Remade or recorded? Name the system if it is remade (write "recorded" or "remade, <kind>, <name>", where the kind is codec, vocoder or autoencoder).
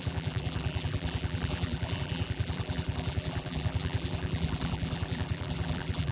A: remade, vocoder, BigVGAN v2